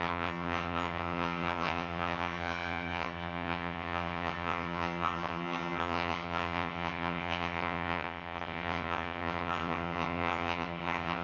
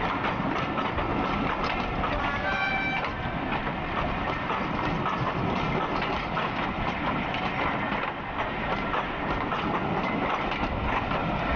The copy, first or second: first